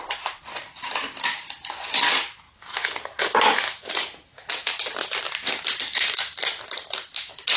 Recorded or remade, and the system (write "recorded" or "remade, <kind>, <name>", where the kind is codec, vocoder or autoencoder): recorded